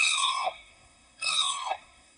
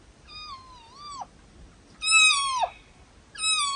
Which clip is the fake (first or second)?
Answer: first